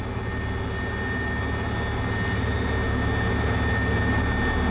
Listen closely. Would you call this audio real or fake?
real